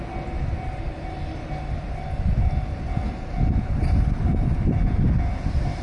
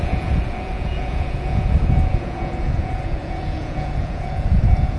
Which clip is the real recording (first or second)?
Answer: first